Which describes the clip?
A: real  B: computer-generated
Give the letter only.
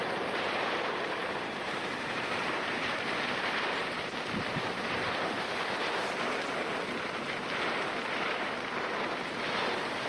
B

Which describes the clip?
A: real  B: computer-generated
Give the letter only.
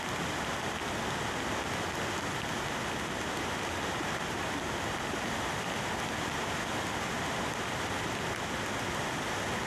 A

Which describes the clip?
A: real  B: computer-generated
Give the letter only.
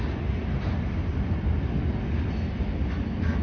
A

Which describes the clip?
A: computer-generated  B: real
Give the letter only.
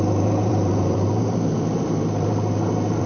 A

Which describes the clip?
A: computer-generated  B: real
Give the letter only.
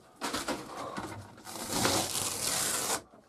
B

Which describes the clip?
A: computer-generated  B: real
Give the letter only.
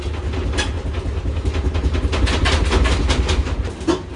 B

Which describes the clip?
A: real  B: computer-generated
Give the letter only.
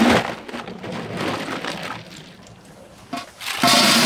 A